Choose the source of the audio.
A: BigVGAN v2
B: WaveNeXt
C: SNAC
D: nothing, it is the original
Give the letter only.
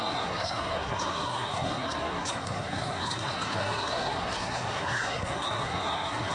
C